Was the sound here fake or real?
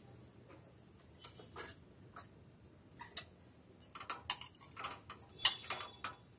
real